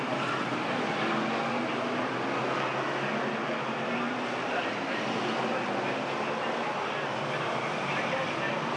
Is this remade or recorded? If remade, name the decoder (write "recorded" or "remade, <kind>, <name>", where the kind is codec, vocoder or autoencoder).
recorded